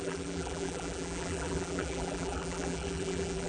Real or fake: fake